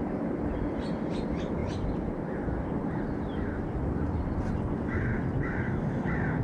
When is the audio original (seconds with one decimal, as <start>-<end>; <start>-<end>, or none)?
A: 0.0-1.6; 3.0-6.4